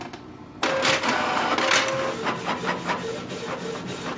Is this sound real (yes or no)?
yes